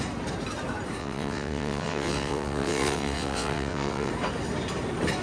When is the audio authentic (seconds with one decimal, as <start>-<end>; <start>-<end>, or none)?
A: 0.0-1.0; 4.1-5.2